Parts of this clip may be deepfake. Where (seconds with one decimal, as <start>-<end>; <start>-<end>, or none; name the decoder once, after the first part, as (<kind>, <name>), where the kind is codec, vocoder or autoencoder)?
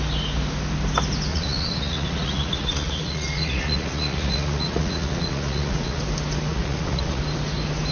1.3-6.0 (vocoder, Vocos); 6.5-7.2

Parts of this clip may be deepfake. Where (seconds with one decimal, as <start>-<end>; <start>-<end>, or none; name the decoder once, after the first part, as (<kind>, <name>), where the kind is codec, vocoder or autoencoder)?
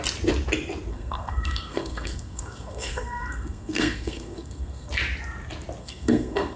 0.9-4.9 (codec, SNAC); 5.8-6.6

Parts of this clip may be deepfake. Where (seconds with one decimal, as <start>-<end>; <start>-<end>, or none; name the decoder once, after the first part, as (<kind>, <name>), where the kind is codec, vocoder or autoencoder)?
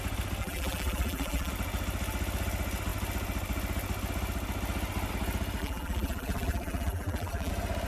0.4-1.5 (vocoder, BigVGAN v2); 5.6-7.5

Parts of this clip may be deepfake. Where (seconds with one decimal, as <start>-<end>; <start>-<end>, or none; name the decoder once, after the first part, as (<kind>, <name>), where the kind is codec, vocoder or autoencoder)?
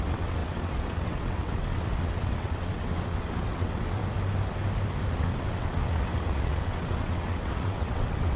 0.0-4.0 (vocoder, WaveNeXt); 5.1-8.4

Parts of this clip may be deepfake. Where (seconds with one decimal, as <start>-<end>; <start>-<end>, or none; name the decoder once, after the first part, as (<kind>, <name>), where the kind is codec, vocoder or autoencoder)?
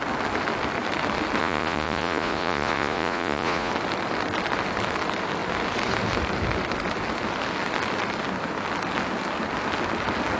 1.4-3.7 (vocoder, Vocos)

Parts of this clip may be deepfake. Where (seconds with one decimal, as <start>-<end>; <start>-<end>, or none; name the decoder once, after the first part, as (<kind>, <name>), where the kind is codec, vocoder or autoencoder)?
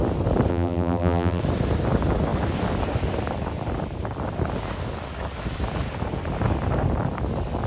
0.5-1.4 (vocoder, BigVGAN v2)